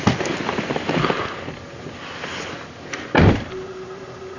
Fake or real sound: real